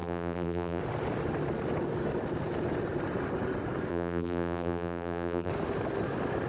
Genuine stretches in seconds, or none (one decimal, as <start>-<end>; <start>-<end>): 0.8-3.9; 5.5-6.5

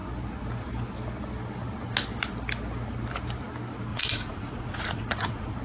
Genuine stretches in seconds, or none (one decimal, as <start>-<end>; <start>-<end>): 0.0-3.9

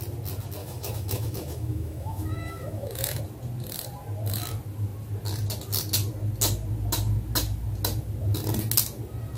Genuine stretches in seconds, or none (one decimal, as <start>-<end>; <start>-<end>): 0.0-0.6; 3.2-9.4

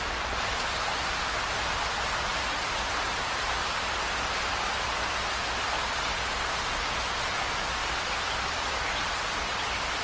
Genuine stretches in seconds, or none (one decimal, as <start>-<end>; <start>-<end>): 0.0-3.6; 5.2-7.8; 9.5-10.0

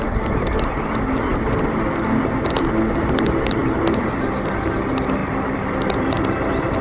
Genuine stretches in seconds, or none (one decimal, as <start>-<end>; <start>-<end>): 0.0-3.6; 4.3-5.2

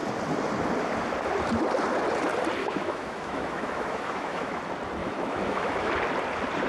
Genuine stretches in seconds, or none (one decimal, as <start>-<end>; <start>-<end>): 0.0-2.6; 4.6-5.0; 5.9-6.7

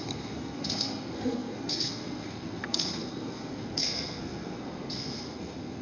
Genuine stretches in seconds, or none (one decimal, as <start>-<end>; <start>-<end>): none

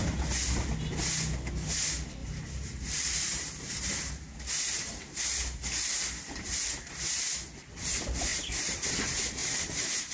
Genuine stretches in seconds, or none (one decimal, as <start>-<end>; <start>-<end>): 0.0-2.2; 7.2-8.3; 8.9-9.4